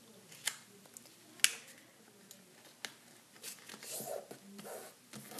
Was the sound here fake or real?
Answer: real